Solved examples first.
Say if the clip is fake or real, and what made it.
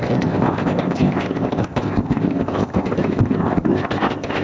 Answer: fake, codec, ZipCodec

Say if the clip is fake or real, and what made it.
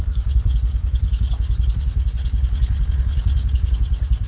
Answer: real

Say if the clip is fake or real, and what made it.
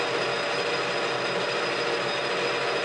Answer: real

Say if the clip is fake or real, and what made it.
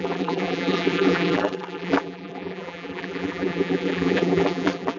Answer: fake, vocoder, BigVGAN v2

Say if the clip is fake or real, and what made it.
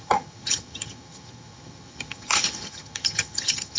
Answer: fake, vocoder, HiFi-GAN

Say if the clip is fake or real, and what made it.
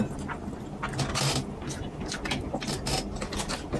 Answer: real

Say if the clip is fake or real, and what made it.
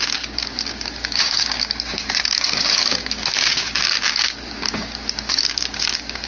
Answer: fake, codec, DAC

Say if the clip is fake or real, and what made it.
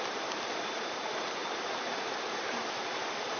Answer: fake, vocoder, BigVGAN v2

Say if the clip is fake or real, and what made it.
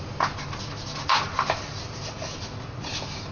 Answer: real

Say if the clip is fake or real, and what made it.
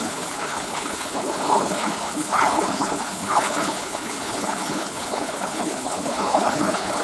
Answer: fake, codec, HILCodec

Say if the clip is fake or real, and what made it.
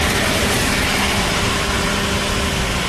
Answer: real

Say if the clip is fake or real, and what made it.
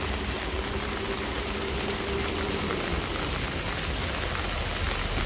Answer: real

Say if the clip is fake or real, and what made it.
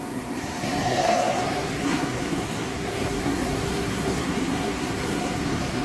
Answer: fake, codec, SNAC